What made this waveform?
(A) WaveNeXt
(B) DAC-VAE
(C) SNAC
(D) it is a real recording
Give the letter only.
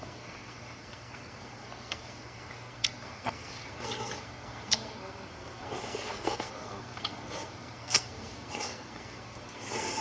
C